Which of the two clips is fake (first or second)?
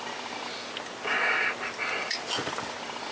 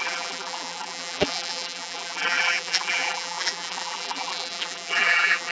second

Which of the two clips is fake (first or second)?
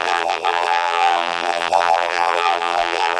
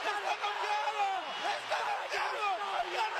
first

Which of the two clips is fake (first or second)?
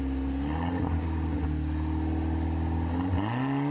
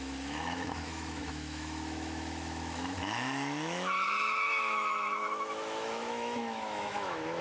second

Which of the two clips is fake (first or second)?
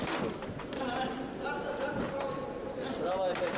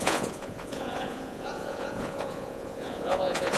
second